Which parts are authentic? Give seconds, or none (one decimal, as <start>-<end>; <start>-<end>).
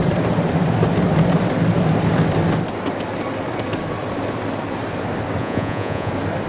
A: 0.0-5.4; 6.1-6.5